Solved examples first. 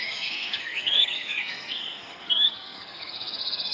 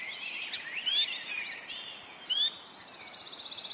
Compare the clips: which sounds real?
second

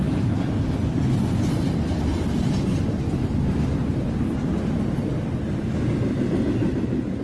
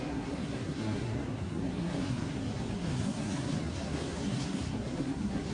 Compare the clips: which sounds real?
first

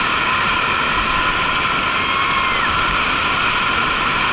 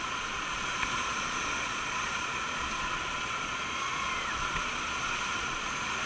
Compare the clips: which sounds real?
first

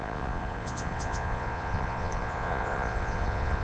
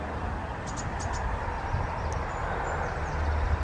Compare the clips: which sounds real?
second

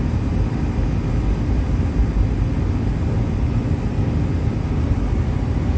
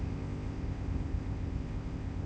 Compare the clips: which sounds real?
first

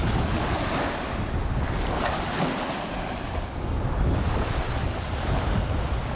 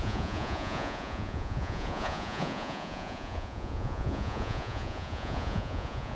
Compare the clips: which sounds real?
first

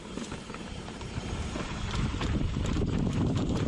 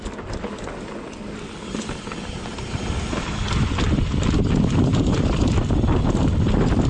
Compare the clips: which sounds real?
second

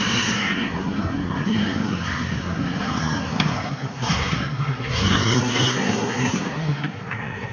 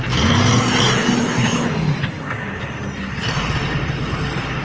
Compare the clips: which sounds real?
second